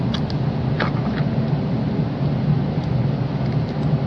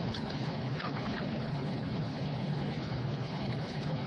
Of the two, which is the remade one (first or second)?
second